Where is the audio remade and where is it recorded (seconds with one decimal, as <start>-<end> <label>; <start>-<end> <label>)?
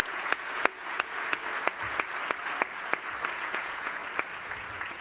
0.0-1.4 remade; 1.4-3.5 recorded; 3.5-4.0 remade; 4.0-4.6 recorded; 4.6-5.0 remade